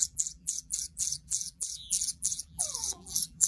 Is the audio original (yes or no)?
no